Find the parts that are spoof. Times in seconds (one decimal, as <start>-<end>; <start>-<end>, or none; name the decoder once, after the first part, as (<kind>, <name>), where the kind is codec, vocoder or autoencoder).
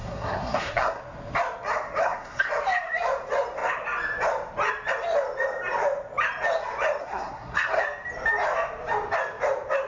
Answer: 0.0-1.0 (codec, SNAC); 2.0-2.5; 7.0-7.8